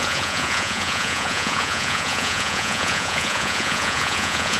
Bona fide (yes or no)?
no